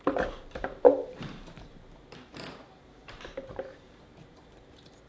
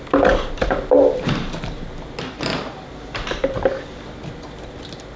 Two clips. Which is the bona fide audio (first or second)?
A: second